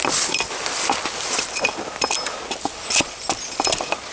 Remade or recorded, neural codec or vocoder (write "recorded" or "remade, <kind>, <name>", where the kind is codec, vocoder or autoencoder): recorded